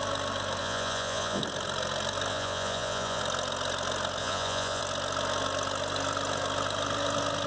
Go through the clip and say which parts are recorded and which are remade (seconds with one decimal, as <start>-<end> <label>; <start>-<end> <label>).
0.0-0.6 recorded; 0.6-1.4 remade; 1.4-2.3 recorded; 2.3-3.2 remade; 3.2-4.2 recorded; 4.2-4.8 remade; 4.8-7.5 recorded